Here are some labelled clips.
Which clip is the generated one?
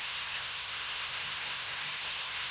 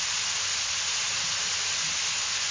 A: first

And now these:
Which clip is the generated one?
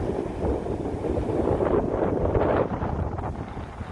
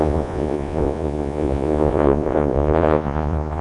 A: second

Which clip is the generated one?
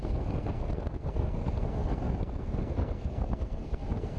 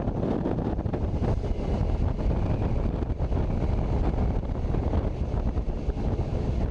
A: first